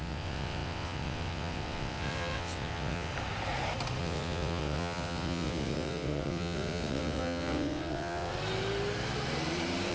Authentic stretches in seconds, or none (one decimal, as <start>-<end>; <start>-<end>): 3.1-4.0; 8.3-9.9

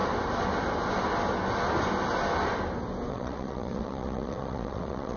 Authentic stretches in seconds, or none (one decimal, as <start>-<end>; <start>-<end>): 0.0-3.1

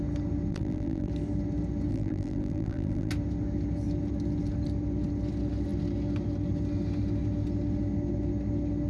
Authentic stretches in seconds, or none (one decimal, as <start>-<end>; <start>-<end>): 0.0-0.5; 1.1-1.9; 3.1-8.9

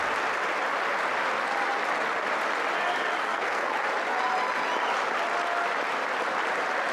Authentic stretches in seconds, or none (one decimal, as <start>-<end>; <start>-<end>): 0.0-3.2; 3.7-6.9

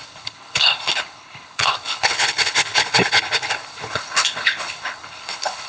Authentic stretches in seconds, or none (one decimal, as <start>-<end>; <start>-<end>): none

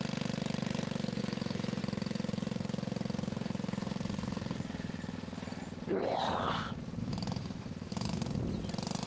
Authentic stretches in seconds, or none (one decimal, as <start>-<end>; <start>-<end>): 0.0-1.2; 1.8-7.0; 8.2-9.1

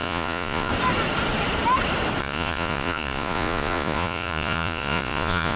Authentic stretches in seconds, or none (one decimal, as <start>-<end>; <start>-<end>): 0.7-2.2

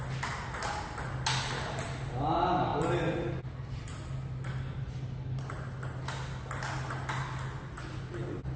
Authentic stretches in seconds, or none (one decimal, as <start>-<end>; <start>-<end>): 0.0-8.6